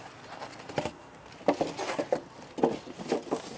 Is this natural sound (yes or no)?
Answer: yes